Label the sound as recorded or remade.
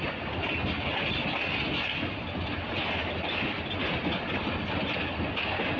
recorded